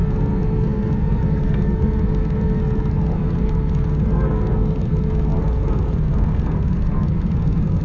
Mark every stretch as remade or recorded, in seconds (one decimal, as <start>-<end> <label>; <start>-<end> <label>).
0.0-7.8 remade